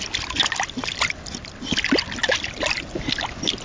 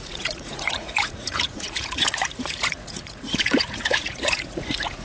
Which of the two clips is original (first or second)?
first